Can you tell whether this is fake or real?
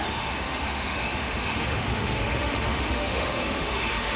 fake